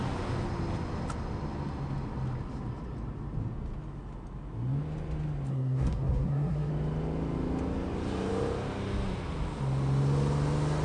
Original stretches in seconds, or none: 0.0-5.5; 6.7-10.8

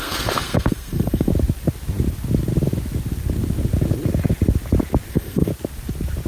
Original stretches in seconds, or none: 1.3-5.1; 5.5-6.3

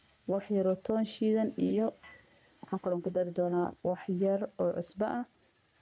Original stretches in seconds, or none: 0.5-1.7; 4.2-5.8

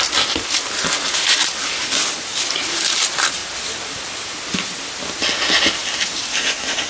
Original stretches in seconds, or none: 0.0-6.3

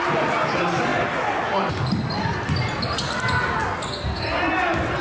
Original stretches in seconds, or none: 0.0-5.0